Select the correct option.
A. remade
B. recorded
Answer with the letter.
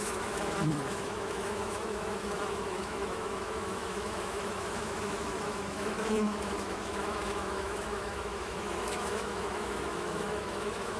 A